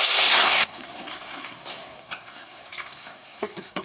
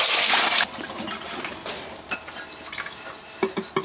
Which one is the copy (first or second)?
first